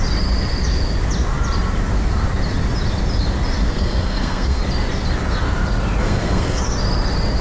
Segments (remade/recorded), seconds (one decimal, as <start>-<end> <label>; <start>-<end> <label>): 0.0-3.6 recorded; 3.6-4.6 remade; 4.6-6.0 recorded; 6.0-6.6 remade; 6.6-7.4 recorded